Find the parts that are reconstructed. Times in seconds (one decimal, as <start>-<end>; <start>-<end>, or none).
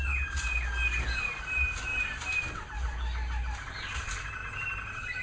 none